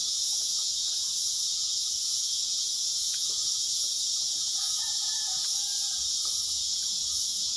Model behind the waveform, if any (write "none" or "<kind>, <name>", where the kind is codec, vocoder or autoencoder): vocoder, Vocos